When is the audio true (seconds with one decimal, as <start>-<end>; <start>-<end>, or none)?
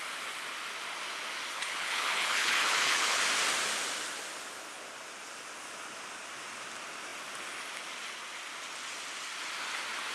0.0-1.5; 3.2-10.1